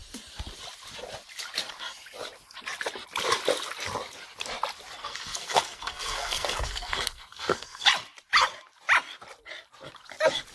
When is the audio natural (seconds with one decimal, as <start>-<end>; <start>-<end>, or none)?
0.0-5.0; 7.9-10.5

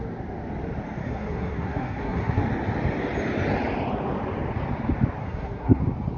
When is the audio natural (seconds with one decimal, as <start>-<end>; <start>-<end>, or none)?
0.0-1.0; 2.4-5.2; 5.8-6.2